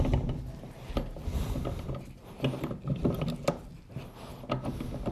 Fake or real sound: real